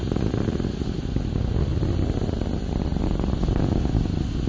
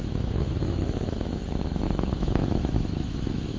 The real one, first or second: first